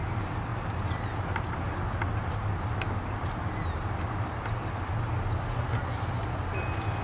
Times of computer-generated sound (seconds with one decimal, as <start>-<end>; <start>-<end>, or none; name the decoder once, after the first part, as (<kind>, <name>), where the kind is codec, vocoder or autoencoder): none